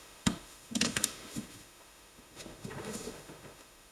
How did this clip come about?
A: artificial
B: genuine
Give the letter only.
A